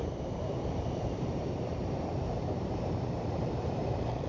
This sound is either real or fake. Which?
fake